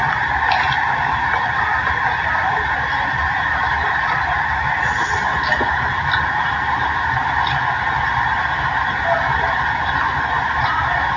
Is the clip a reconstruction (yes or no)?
no